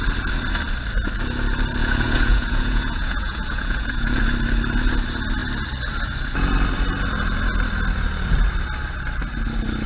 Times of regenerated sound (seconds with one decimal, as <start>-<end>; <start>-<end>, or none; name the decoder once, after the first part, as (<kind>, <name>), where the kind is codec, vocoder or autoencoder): 1.8-4.2 (vocoder, Vocos)